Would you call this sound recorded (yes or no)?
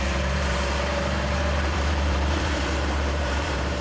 no